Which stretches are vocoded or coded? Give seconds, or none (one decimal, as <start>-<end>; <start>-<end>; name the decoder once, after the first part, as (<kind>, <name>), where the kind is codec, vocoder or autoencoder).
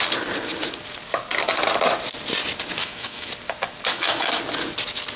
2.8-3.3 (autoencoder, DAC-VAE); 3.9-4.4